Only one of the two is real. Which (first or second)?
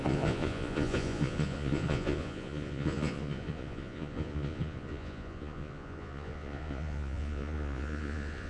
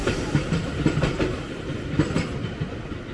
second